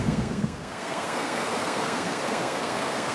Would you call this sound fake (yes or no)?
yes